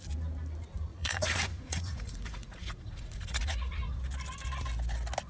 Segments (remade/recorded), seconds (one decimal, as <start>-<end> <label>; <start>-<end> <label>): 0.0-0.9 recorded; 0.9-4.0 remade; 4.0-5.3 recorded